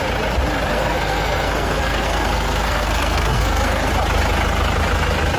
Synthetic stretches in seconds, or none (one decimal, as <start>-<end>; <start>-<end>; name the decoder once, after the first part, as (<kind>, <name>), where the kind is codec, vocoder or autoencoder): 0.7-3.9 (codec, SNAC)